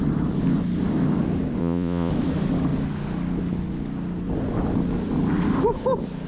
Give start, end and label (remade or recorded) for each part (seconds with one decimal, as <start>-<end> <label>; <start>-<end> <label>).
0.0-1.6 recorded; 1.6-2.1 remade; 2.1-6.3 recorded